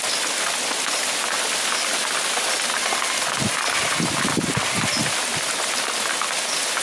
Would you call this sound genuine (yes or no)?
yes